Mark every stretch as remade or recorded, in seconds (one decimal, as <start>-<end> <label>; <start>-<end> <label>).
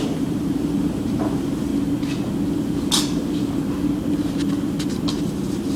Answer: 0.0-1.7 remade; 1.7-5.2 recorded; 5.2-5.8 remade